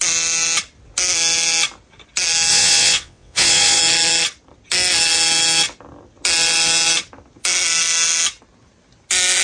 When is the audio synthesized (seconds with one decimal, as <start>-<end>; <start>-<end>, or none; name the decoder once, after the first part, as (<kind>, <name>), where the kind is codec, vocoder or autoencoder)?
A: 2.5-3.8 (vocoder, WaveNeXt)